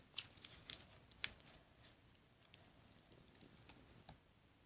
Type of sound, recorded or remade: recorded